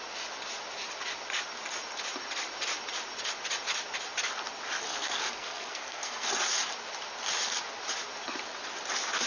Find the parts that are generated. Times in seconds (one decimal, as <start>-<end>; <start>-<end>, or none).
4.9-6.3